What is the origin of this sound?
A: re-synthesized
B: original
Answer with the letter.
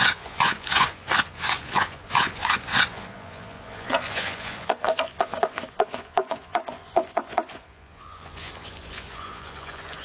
A